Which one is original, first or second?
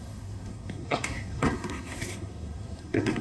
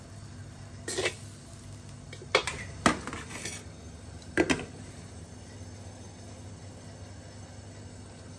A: second